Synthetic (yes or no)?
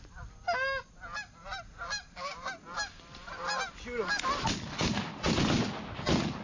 no